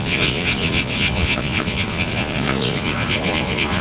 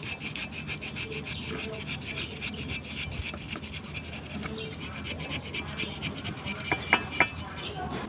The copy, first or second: first